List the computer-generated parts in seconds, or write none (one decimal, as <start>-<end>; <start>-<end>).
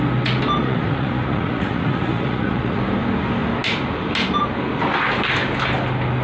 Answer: 0.6-2.8